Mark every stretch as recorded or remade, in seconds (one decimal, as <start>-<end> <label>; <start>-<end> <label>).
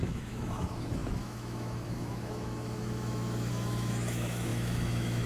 0.0-5.3 remade